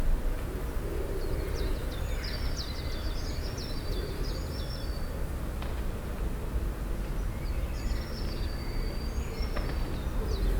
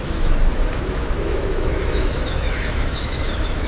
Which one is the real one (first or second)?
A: first